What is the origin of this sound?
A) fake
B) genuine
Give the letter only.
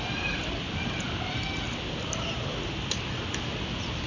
B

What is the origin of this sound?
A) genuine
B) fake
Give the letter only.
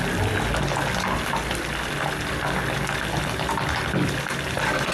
A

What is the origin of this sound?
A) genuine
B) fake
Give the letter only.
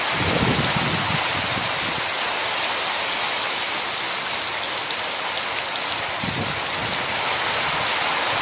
A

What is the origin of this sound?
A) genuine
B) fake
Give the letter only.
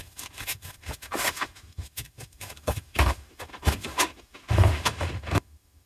B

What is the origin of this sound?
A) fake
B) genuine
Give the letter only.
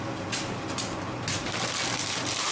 B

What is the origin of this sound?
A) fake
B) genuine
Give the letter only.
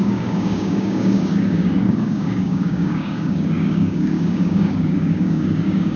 A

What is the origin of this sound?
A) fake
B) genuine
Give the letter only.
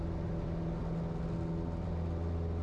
B